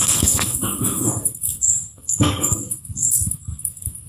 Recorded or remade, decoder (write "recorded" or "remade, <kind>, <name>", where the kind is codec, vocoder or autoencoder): remade, codec, SNAC